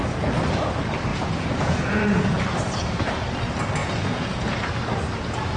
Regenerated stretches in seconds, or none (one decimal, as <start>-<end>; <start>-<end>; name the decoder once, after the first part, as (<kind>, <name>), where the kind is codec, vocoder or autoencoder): 1.1-2.4 (vocoder, Vocos); 3.8-4.7